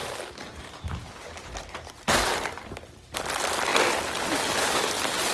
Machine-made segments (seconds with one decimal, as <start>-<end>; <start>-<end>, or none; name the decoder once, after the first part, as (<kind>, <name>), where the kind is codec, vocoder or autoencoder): none